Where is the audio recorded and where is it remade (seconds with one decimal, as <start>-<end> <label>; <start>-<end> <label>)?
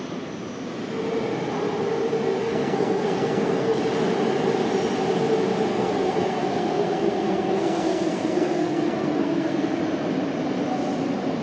0.0-2.4 recorded; 2.4-3.8 remade; 3.8-5.7 recorded; 5.7-9.8 remade; 9.8-11.4 recorded